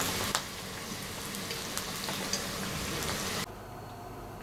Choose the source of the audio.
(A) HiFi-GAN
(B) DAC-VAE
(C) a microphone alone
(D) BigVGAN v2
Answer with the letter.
C